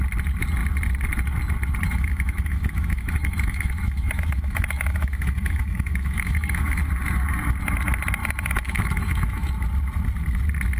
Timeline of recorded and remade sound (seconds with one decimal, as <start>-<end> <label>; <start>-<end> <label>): 0.0-1.8 recorded; 1.8-6.8 remade; 6.8-8.2 recorded; 8.2-9.5 remade; 9.5-10.8 recorded